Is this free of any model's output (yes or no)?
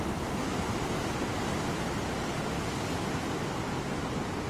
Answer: yes